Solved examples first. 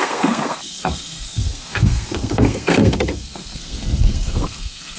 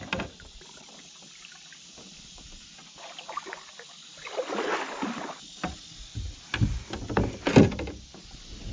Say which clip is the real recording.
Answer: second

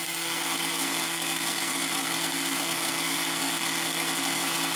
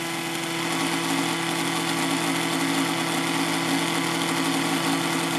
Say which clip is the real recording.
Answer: second